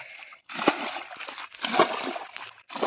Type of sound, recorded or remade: recorded